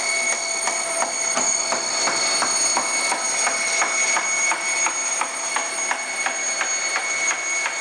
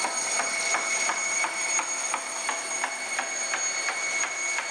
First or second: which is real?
first